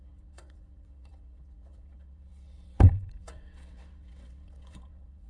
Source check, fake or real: fake